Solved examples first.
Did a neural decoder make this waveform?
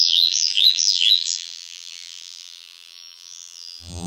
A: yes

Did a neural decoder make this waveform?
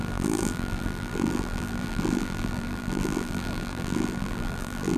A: yes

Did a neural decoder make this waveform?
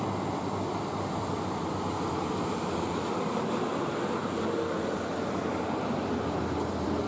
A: yes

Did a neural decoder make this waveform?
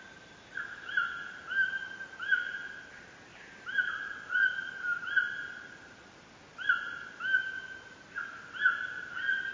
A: no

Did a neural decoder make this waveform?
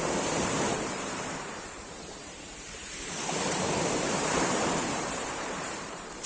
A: yes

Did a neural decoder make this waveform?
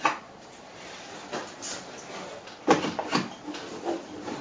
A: yes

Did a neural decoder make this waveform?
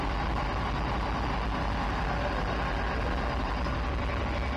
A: no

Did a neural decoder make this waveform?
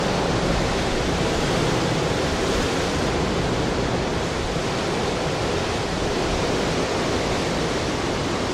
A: no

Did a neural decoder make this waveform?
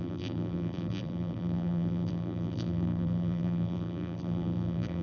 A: yes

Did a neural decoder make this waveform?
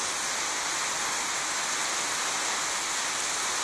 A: no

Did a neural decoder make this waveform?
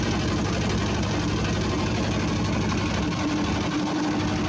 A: no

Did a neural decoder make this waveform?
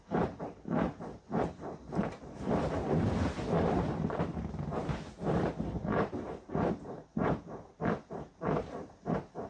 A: yes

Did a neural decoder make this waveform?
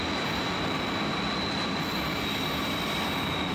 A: no